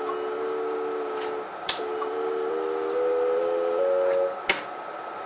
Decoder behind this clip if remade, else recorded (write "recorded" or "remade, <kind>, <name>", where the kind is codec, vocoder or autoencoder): recorded